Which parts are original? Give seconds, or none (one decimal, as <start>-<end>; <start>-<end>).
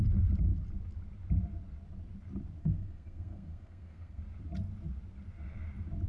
0.0-2.6; 4.2-6.1